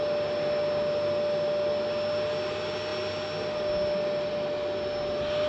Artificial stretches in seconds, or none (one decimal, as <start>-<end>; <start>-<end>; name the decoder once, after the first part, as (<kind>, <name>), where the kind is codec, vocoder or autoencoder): none